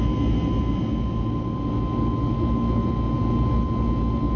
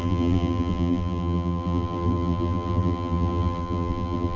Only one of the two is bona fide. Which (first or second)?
first